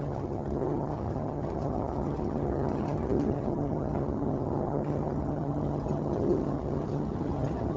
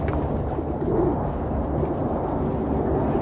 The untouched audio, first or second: second